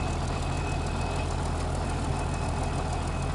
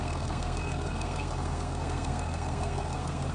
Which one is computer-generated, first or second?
second